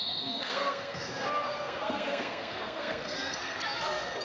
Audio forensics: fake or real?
fake